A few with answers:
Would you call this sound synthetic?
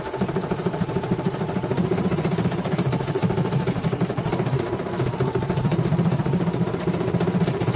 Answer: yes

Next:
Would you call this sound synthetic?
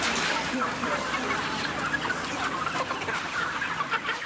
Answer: no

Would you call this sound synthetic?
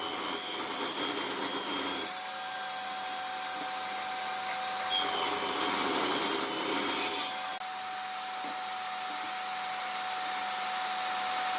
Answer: no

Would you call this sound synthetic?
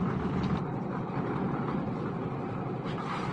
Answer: no